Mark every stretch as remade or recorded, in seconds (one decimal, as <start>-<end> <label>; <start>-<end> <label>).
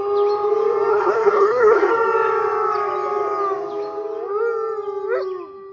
0.0-0.9 recorded; 0.9-1.9 remade; 1.9-5.7 recorded